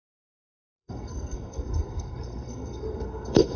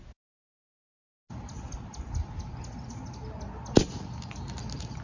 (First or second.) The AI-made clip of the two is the first